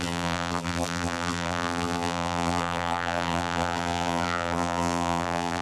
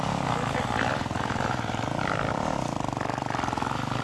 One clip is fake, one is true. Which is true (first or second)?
second